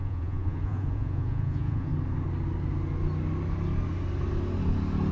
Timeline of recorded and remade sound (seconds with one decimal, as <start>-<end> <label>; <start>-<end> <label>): 0.0-1.9 remade; 1.9-5.1 recorded